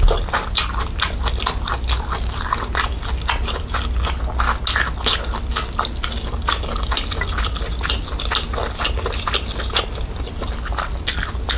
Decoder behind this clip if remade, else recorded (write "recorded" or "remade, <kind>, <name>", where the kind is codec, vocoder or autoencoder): recorded